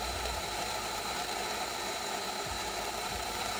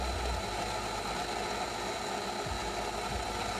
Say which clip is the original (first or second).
second